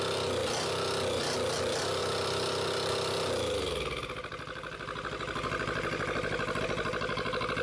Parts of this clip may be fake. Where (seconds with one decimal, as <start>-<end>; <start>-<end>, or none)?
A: none